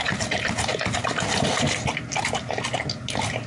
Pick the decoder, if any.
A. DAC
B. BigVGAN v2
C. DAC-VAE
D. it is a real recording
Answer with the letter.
D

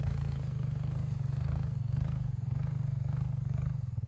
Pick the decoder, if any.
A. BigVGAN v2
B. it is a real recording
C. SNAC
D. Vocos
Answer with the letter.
C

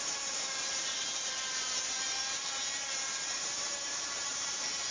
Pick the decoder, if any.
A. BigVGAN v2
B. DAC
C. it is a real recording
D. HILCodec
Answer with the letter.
A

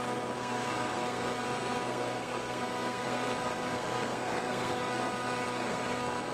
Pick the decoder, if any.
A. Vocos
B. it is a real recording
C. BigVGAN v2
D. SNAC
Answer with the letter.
D